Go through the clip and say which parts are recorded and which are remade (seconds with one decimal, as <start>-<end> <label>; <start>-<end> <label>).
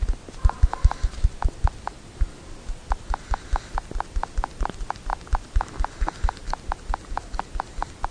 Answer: 0.0-8.1 recorded